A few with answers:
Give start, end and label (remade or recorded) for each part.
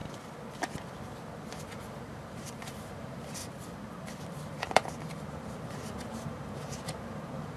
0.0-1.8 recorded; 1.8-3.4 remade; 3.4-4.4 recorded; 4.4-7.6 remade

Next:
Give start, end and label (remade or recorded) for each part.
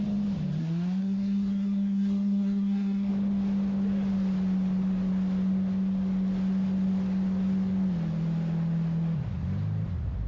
0.0-0.6 recorded; 0.6-3.1 remade; 3.1-10.3 recorded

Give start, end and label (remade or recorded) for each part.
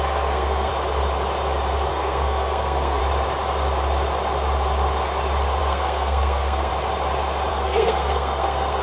0.0-0.7 remade; 0.7-1.9 recorded; 1.9-3.0 remade; 3.0-5.6 recorded; 5.6-6.7 remade; 6.7-7.5 recorded; 7.5-8.8 remade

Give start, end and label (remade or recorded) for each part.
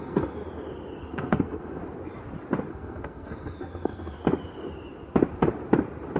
0.0-0.4 remade; 0.4-1.0 recorded; 1.0-1.8 remade; 1.8-2.7 recorded; 2.7-4.2 remade; 4.2-6.2 recorded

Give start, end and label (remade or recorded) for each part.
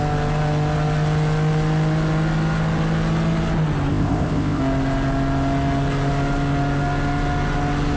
0.0-3.9 recorded; 3.9-4.6 remade; 4.6-8.0 recorded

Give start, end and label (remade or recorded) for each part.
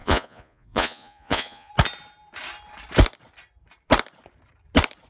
0.0-1.7 remade; 1.7-5.1 recorded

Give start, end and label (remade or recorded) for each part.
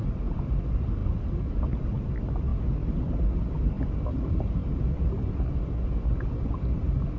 0.0-1.0 recorded; 1.0-1.6 remade; 1.6-7.2 recorded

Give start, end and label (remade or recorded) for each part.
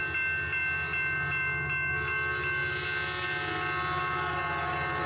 0.0-5.1 recorded